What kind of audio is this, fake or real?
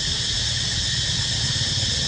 real